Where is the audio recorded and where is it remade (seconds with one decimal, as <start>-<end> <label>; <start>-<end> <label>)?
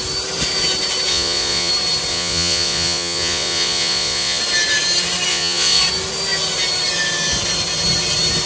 0.0-1.1 recorded; 1.1-1.7 remade; 1.7-2.1 recorded; 2.1-4.4 remade; 4.4-5.3 recorded; 5.3-5.8 remade; 5.8-8.5 recorded